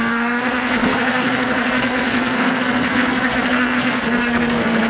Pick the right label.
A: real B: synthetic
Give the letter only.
B